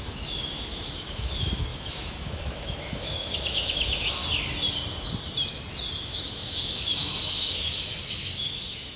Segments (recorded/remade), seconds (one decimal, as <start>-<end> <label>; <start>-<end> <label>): 0.0-4.2 remade; 4.2-6.0 recorded; 6.0-9.0 remade